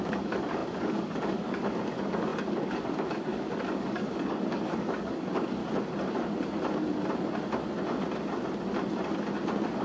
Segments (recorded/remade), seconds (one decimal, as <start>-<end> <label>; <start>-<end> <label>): 0.0-5.6 remade; 5.6-9.8 recorded